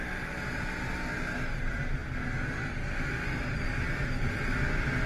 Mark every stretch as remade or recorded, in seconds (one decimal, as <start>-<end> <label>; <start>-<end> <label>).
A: 0.0-5.1 recorded